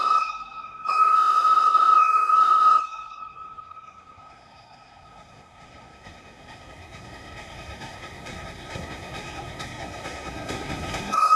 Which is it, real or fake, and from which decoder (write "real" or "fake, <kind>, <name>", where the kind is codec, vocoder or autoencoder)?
fake, codec, SNAC